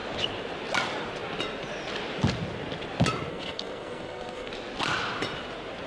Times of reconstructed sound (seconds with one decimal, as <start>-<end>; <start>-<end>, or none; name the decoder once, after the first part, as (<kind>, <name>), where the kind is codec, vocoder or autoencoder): 3.3-4.5 (codec, SNAC)